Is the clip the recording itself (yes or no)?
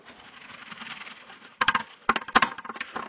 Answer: yes